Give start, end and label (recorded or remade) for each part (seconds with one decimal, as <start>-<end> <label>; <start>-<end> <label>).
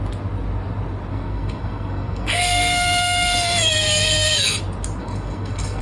0.0-1.1 recorded; 1.1-4.6 remade; 4.6-5.0 recorded; 5.0-5.8 remade